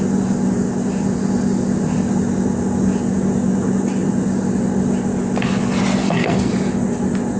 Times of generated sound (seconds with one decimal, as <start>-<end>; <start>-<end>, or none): 6.0-6.5